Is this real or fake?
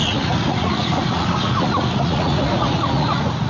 fake